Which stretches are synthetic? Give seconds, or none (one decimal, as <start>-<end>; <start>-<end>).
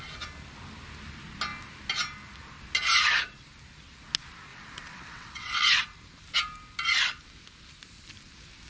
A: 4.5-5.8